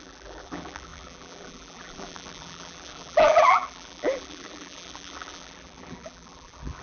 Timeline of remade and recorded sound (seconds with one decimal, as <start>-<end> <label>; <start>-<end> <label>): 0.0-6.8 remade